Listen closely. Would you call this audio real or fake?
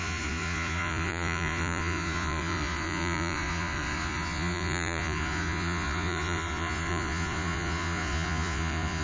fake